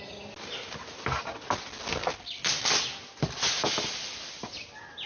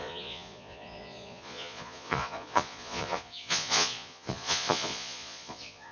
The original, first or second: first